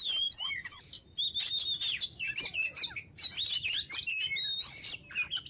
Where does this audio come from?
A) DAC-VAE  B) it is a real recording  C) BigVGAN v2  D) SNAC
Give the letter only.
B